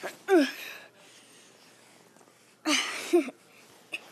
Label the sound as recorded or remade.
recorded